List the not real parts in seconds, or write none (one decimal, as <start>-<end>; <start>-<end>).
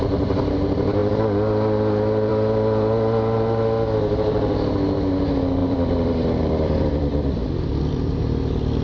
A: 5.6-8.2